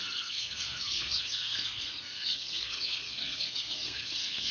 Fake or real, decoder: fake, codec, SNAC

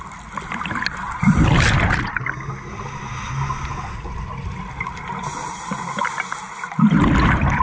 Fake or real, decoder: real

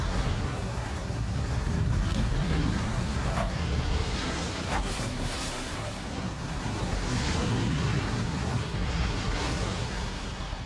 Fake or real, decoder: fake, codec, SNAC